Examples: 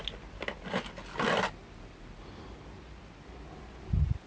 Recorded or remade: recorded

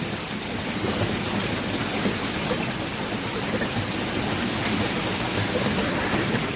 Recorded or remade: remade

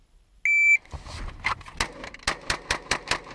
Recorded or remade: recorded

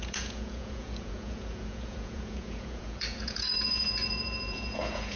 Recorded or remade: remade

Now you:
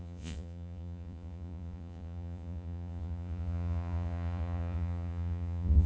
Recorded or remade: remade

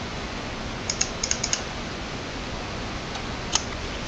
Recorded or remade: remade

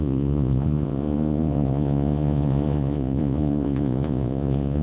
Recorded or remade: remade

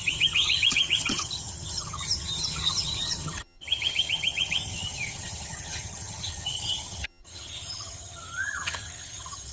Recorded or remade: remade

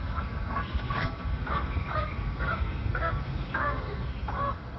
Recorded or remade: remade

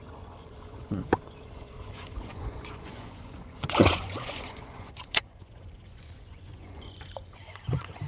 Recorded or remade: remade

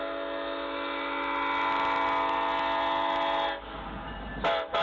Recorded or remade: recorded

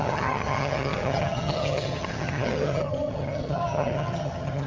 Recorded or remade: remade